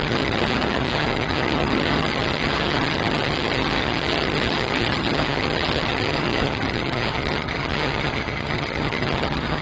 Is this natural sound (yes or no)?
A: no